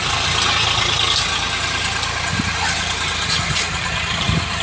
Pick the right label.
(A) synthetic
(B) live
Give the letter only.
B